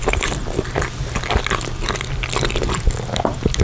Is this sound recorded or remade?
recorded